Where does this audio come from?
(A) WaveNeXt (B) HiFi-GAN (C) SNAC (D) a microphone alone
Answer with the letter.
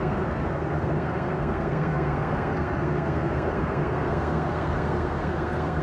C